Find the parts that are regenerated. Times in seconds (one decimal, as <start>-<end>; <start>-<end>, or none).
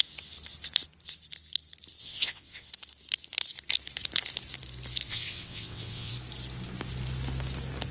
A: 2.0-2.7; 5.1-6.1